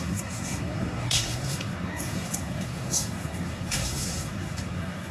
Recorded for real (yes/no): no